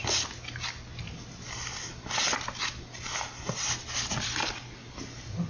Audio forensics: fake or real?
real